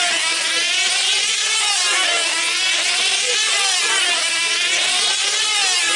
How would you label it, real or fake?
real